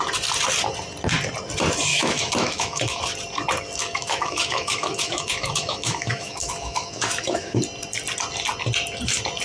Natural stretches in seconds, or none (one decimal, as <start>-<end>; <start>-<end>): 0.0-1.9; 3.0-3.8; 7.6-9.4